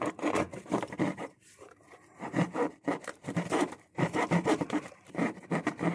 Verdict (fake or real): fake